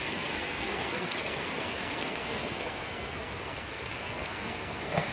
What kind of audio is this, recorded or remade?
remade